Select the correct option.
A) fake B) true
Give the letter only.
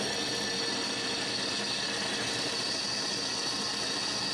B